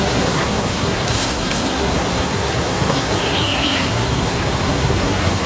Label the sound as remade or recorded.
remade